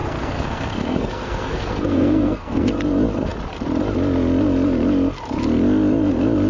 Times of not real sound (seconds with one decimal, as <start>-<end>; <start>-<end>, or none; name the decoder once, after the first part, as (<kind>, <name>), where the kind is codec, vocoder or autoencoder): 0.0-2.7 (codec, SNAC)